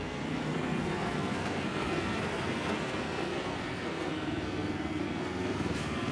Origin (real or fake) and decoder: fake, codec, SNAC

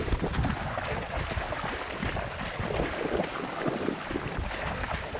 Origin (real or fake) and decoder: real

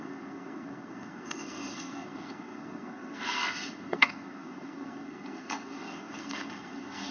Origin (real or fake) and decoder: fake, codec, SNAC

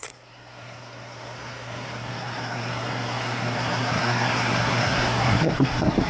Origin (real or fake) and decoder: fake, codec, SNAC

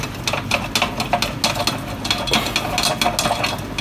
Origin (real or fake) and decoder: real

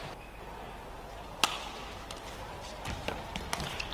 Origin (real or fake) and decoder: real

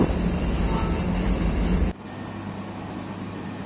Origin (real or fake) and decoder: real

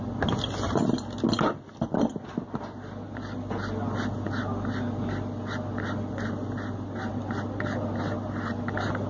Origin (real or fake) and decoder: real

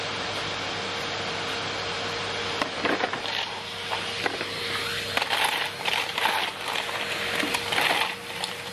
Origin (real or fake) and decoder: real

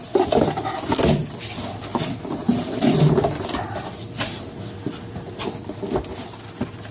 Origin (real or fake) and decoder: real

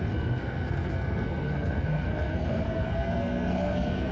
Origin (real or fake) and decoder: fake, codec, SNAC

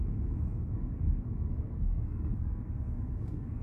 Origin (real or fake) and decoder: fake, codec, SNAC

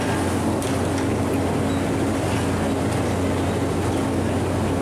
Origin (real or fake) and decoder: real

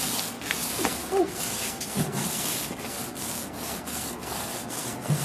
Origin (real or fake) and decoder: fake, codec, SNAC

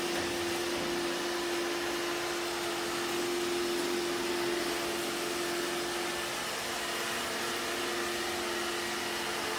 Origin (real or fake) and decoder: real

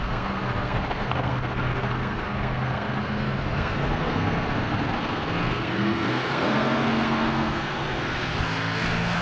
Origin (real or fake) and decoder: fake, codec, SNAC